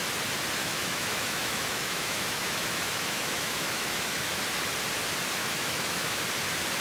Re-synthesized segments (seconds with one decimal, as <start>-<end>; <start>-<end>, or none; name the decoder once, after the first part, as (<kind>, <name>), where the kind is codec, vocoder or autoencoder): 0.6-4.4 (autoencoder, DAC-VAE); 5.4-6.2